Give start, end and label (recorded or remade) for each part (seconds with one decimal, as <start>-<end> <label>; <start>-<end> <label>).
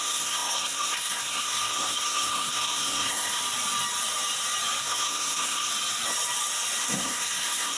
0.0-3.4 remade; 3.4-4.8 recorded; 4.8-5.7 remade; 5.7-6.8 recorded; 6.8-7.8 remade